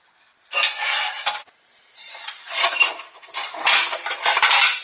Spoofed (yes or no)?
no